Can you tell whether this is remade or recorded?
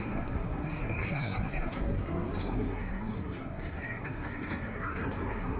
remade